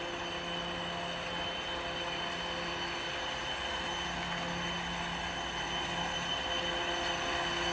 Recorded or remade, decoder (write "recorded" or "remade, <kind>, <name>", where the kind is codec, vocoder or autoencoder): recorded